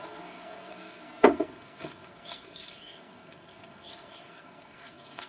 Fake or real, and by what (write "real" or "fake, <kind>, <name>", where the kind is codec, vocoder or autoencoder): fake, codec, SNAC